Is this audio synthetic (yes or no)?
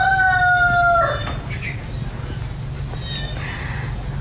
no